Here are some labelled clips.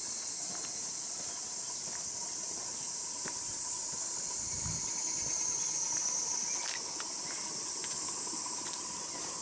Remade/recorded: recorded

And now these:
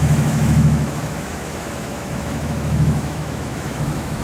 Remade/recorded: remade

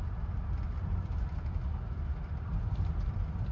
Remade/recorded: recorded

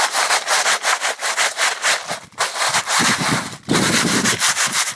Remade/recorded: recorded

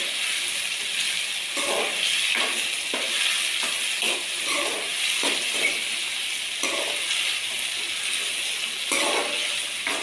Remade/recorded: recorded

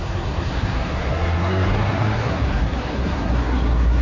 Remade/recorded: remade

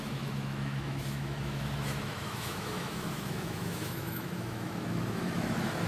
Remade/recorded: remade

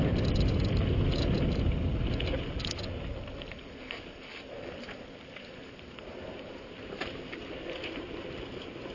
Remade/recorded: recorded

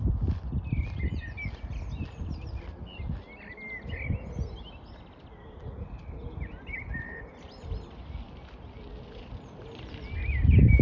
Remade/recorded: recorded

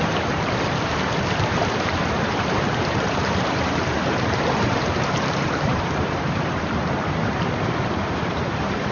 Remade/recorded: remade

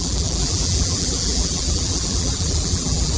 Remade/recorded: remade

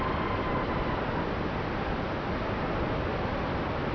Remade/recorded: recorded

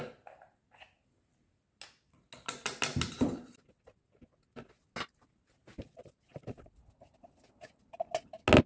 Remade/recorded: recorded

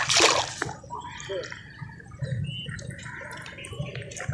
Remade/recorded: recorded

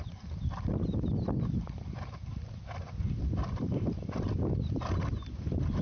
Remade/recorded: recorded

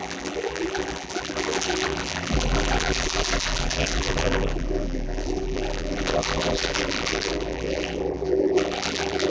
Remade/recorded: remade